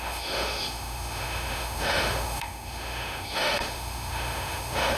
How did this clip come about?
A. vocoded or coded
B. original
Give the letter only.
A